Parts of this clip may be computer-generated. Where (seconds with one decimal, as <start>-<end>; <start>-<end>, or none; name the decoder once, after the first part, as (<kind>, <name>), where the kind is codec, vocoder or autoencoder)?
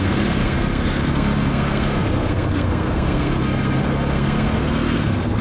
0.0-5.4 (codec, SNAC)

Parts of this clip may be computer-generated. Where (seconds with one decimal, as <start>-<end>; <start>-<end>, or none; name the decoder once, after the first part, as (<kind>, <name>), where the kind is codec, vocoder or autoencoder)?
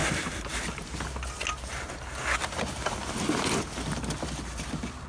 none